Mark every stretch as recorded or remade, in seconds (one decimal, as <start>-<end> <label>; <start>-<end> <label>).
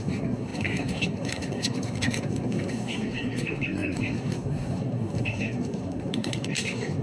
0.0-7.0 remade